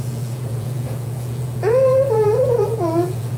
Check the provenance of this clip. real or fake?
fake